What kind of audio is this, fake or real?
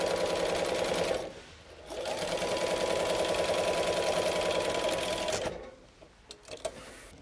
real